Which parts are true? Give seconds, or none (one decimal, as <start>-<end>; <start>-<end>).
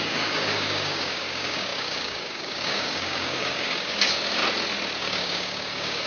4.4-5.0